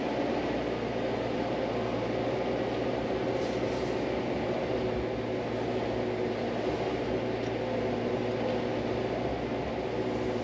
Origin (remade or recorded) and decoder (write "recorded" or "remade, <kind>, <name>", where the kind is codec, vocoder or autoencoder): recorded